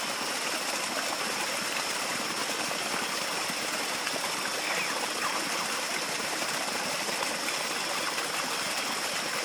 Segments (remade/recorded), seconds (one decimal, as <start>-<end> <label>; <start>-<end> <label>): 0.0-9.4 recorded